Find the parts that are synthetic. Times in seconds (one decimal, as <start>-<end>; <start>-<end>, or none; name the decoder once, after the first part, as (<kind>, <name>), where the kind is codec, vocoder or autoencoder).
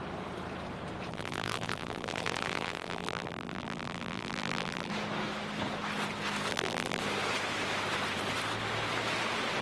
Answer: 1.1-4.9 (vocoder, BigVGAN v2); 6.5-7.0